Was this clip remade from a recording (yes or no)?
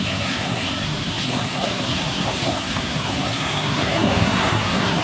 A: yes